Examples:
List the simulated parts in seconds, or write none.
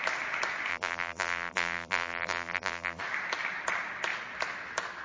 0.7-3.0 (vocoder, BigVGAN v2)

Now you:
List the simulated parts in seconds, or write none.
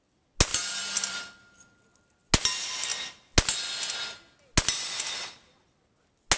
0.5-2.3 (vocoder, BigVGAN v2)